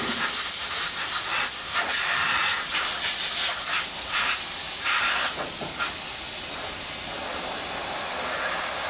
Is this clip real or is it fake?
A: real